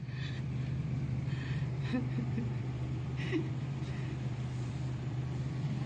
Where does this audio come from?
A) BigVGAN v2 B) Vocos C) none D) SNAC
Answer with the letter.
A